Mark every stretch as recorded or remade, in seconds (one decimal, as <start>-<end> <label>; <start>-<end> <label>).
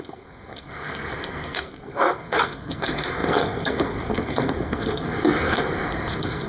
0.0-6.5 remade